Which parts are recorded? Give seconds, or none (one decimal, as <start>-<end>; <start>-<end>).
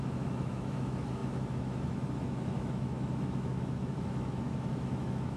none